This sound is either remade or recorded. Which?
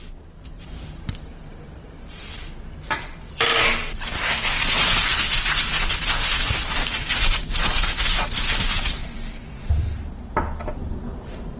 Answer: remade